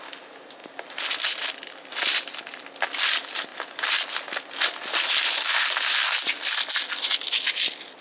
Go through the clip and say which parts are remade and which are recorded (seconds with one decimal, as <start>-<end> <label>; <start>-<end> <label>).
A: 0.0-8.0 recorded